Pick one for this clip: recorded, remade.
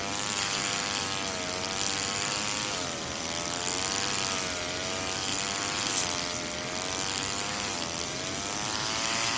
recorded